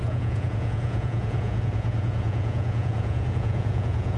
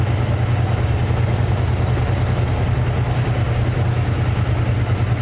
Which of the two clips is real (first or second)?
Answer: second